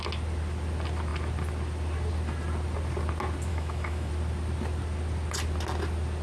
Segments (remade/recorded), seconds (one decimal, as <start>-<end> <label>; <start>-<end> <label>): 0.0-3.5 recorded; 3.5-4.1 remade; 4.1-6.2 recorded